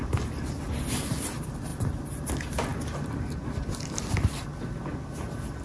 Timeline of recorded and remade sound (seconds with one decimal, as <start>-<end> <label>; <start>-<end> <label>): 0.0-5.6 recorded